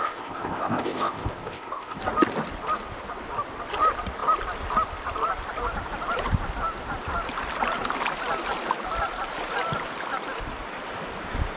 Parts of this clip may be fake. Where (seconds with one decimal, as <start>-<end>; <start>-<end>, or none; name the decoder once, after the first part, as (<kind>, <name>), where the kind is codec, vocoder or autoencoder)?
0.0-2.0 (codec, ZipCodec)